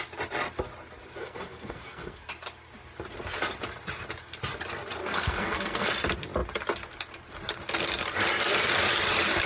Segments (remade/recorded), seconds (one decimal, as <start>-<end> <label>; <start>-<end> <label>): 0.0-1.2 recorded; 1.2-2.3 remade; 2.3-5.0 recorded; 5.0-5.9 remade; 5.9-9.5 recorded